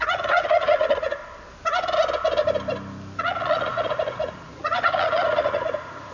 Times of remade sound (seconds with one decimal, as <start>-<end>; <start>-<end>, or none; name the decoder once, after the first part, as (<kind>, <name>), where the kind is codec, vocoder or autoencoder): 0.0-1.2 (vocoder, Vocos); 3.2-6.1